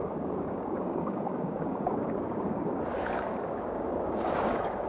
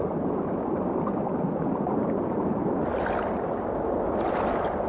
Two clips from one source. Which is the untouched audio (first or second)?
second